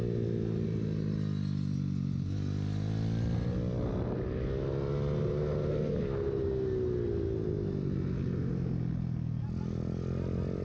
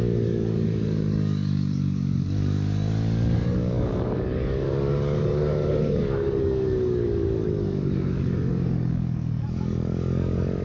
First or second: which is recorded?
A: first